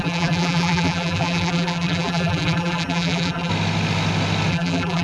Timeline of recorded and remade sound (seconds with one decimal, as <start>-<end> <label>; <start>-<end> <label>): 0.0-3.5 remade; 3.5-4.5 recorded; 4.5-5.0 remade